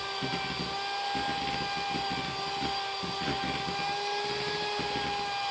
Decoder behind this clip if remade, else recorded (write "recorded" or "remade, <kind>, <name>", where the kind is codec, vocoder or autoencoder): recorded